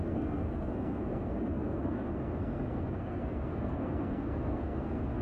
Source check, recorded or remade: remade